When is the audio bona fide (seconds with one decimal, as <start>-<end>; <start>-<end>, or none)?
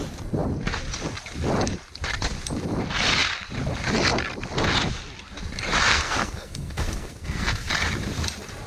0.0-5.9; 7.7-8.7